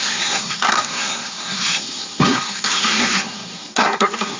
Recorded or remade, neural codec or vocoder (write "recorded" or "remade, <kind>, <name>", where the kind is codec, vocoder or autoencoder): remade, codec, SNAC